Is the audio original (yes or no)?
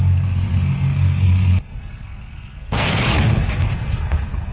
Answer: no